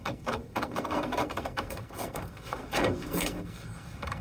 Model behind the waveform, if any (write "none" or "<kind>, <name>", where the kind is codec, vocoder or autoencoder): codec, SNAC